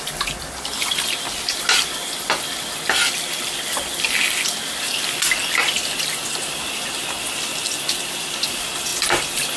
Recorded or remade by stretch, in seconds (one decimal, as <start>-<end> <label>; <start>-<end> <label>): 0.0-2.0 recorded; 2.0-4.5 remade; 4.5-5.4 recorded; 5.4-6.2 remade; 6.2-7.5 recorded; 7.5-8.1 remade; 8.1-8.9 recorded; 8.9-9.6 remade